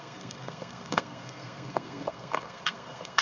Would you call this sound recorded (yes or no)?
no